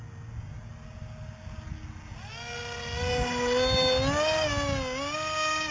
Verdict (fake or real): real